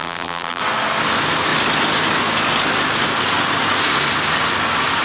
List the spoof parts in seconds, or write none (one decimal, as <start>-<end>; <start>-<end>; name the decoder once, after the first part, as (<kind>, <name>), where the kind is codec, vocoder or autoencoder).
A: 0.0-0.6 (vocoder, BigVGAN v2)